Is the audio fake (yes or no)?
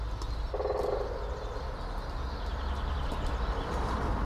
no